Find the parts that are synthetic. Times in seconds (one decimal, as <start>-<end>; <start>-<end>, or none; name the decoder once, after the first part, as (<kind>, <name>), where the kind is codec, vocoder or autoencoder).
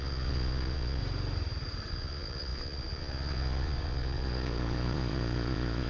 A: 0.0-1.0 (vocoder, Vocos); 1.9-5.9